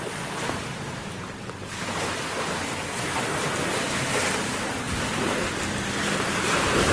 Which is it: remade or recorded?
recorded